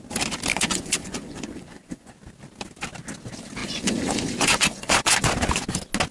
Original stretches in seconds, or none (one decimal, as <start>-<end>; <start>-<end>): 0.0-0.5; 2.1-3.6; 5.3-6.1